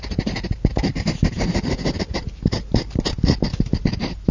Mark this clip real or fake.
fake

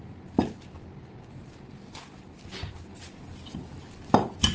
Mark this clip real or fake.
real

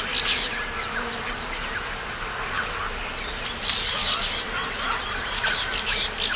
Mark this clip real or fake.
real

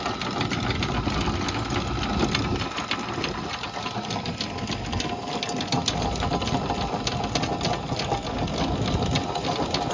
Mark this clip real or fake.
real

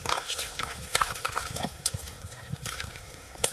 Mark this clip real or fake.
fake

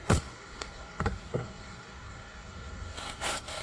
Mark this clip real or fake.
fake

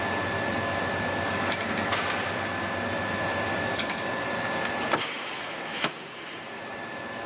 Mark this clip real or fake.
real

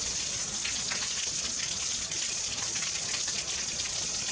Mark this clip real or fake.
fake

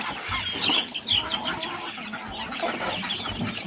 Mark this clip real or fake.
real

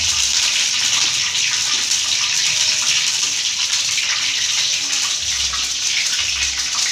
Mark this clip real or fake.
real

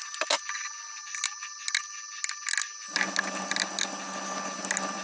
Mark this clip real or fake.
real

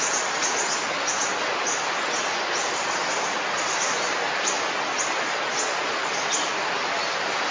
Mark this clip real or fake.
real